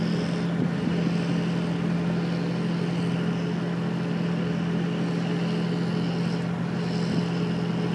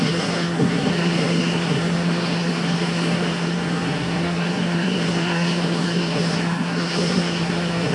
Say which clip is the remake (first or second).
second